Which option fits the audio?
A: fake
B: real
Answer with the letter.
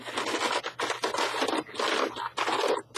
B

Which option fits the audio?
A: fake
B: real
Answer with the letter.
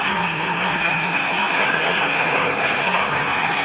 A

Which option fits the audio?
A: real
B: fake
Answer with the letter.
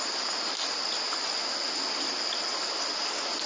A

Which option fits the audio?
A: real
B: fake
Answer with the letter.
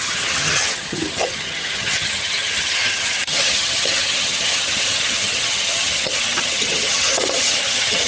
B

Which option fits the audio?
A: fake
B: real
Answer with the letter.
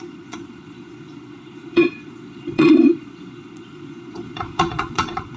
A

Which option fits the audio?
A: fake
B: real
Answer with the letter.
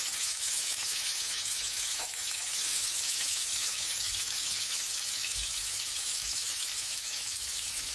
A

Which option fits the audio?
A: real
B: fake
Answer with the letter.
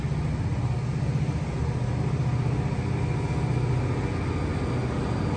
A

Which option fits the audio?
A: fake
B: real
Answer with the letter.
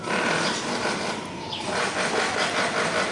B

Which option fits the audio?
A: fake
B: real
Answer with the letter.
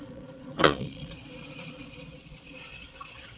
A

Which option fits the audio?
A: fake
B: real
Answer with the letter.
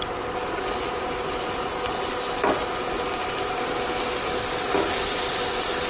B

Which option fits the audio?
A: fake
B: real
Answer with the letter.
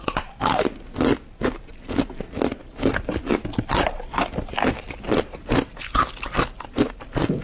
B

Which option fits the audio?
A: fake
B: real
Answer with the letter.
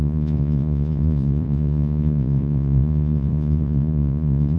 A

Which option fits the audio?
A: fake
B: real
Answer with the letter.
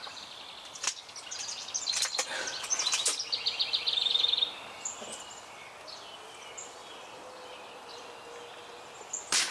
B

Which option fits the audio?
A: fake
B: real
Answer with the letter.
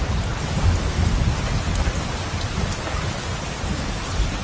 B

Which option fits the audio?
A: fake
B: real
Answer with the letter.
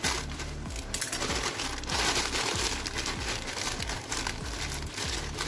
B